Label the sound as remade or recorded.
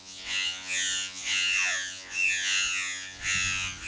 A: remade